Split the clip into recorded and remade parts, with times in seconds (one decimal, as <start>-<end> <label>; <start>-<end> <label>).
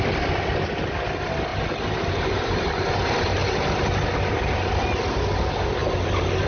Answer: 0.0-1.5 recorded; 1.5-2.9 remade; 2.9-3.4 recorded; 3.4-4.0 remade; 4.0-5.8 recorded; 5.8-6.5 remade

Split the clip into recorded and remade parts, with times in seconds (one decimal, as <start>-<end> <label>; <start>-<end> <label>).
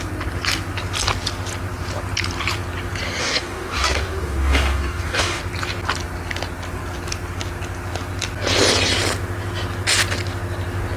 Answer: 0.0-3.2 recorded; 3.2-5.4 remade; 5.4-11.0 recorded